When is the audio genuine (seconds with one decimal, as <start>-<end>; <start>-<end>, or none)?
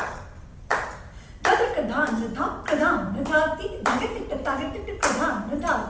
none